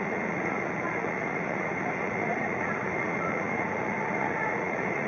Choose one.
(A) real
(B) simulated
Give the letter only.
B